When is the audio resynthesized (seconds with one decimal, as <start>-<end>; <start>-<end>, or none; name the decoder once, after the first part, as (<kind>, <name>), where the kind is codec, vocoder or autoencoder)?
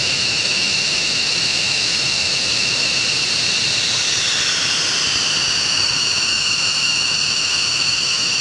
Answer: 0.0-3.0 (autoencoder, DAC-VAE); 5.6-8.4